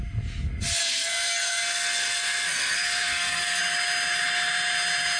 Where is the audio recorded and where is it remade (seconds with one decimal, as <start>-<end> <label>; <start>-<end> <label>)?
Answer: 0.0-0.8 recorded; 0.8-3.6 remade; 3.6-5.2 recorded